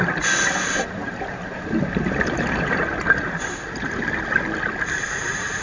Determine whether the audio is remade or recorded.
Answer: recorded